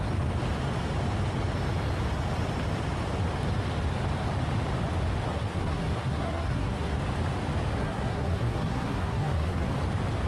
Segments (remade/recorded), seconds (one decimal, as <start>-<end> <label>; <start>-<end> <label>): 0.0-5.3 recorded; 5.3-7.0 remade; 7.0-7.8 recorded; 7.8-9.7 remade; 9.7-10.3 recorded